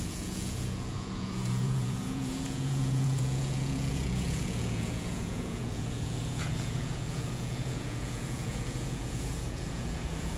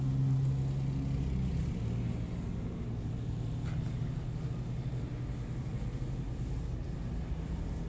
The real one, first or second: second